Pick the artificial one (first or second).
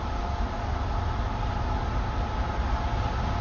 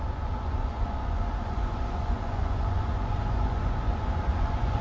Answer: second